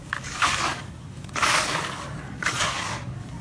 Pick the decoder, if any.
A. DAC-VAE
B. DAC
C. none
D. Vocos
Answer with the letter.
B